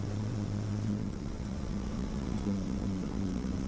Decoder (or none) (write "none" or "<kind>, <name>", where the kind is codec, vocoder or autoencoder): vocoder, WaveNeXt